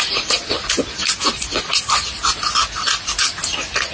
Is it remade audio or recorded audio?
recorded